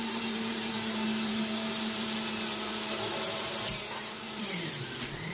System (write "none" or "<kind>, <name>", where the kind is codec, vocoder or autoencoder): vocoder, BigVGAN v2